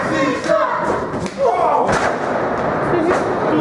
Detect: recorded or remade recorded